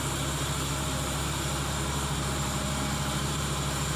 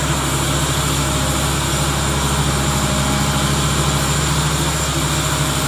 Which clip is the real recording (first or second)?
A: second